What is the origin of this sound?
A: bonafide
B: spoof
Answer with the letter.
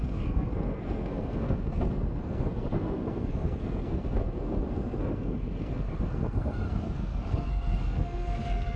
B